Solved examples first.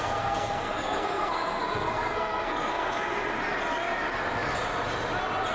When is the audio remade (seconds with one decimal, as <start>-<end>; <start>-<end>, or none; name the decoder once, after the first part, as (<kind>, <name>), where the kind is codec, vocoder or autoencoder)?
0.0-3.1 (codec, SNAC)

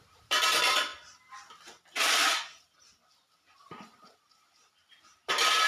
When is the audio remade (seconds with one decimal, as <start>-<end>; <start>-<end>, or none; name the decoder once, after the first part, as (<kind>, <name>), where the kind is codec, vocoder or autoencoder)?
none

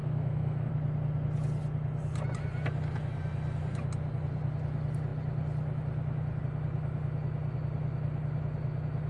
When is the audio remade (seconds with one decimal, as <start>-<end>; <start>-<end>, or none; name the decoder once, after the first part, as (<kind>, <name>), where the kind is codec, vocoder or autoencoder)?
0.0-0.7 (codec, SNAC)

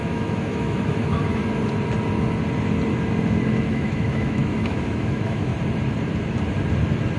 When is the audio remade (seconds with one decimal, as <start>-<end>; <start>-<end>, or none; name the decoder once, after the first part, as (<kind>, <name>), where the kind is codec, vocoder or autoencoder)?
0.0-1.4 (autoencoder, DAC-VAE); 3.7-5.5

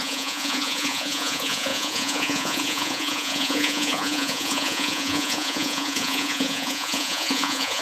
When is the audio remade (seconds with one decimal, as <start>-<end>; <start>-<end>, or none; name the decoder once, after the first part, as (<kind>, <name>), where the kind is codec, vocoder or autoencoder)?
0.0-7.8 (vocoder, Vocos)

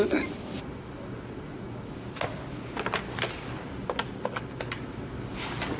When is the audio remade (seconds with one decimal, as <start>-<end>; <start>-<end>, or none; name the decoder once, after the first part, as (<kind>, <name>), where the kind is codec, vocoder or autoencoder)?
none

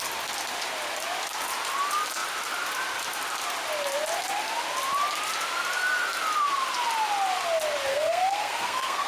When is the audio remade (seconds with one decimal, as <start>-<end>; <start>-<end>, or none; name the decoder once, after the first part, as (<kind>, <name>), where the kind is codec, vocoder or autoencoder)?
7.9-9.1 (codec, SNAC)

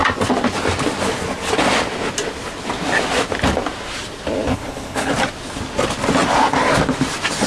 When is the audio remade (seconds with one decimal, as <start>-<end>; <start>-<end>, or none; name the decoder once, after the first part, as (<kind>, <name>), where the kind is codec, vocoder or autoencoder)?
4.5-5.1 (codec, HILCodec)